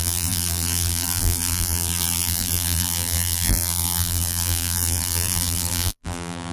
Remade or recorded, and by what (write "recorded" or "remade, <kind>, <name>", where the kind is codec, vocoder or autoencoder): remade, vocoder, BigVGAN v2